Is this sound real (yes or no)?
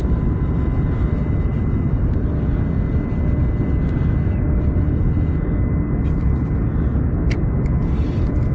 yes